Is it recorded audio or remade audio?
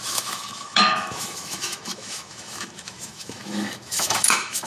remade